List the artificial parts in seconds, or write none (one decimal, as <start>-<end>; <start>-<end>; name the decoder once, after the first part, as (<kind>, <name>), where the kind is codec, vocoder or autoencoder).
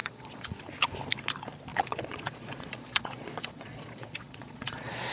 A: 0.0-0.6 (vocoder, Vocos); 1.7-5.1